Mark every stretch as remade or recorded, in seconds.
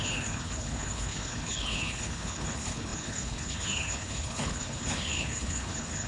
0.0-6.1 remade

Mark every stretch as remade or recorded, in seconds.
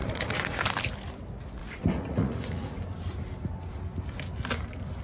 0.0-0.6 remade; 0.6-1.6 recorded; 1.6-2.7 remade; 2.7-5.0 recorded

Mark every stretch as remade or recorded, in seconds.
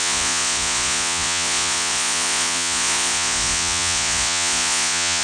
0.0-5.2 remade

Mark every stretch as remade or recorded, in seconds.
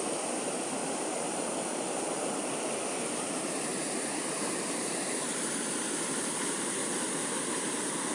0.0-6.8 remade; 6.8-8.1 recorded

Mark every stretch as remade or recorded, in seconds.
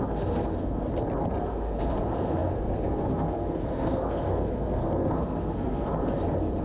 0.0-0.9 remade; 0.9-1.4 recorded; 1.4-5.9 remade; 5.9-6.6 recorded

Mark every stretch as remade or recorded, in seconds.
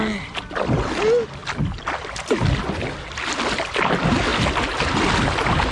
0.0-5.7 recorded